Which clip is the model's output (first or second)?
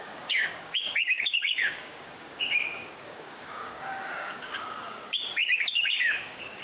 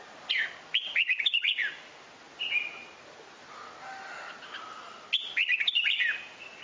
first